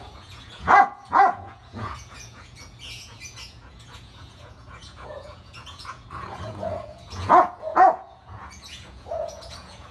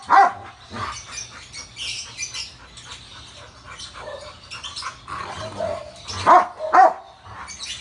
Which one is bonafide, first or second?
second